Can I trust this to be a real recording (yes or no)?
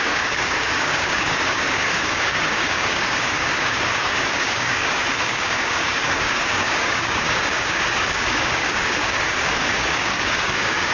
no